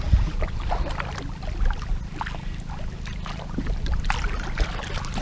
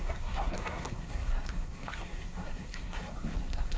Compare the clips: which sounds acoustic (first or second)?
first